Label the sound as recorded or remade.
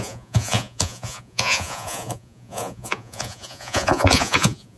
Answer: remade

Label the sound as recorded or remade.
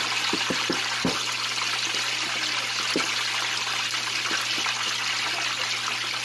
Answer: recorded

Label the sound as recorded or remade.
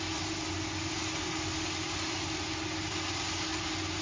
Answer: recorded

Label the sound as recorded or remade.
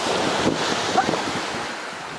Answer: recorded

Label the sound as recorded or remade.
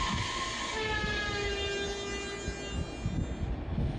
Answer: recorded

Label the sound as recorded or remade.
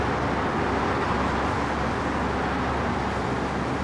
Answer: recorded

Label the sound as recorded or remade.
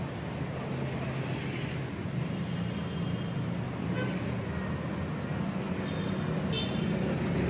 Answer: recorded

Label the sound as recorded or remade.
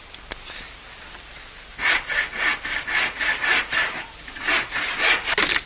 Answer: recorded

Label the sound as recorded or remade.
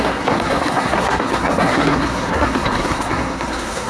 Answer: remade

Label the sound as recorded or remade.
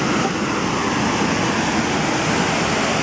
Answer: recorded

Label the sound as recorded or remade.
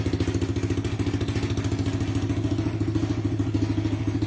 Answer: recorded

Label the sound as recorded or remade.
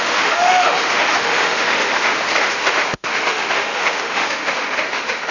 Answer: remade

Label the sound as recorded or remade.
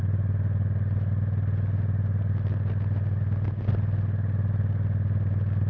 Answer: recorded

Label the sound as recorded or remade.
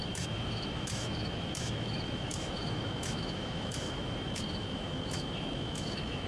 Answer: remade